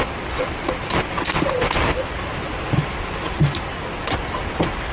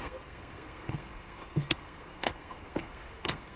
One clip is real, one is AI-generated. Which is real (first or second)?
first